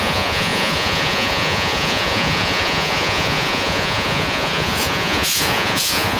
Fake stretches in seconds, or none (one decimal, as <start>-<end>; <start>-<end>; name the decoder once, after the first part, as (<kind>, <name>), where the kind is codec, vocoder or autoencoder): 0.0-6.2 (vocoder, Vocos)